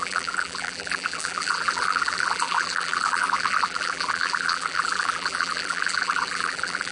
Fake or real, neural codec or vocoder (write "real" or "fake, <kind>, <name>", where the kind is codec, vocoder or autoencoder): fake, vocoder, BigVGAN v2